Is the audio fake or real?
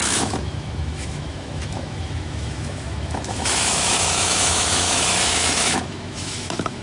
fake